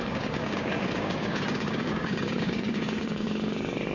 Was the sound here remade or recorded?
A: remade